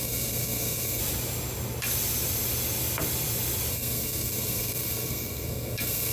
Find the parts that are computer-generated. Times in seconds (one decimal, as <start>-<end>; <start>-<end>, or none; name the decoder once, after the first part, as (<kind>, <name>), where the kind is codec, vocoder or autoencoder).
0.0-1.0 (codec, SNAC); 3.7-6.1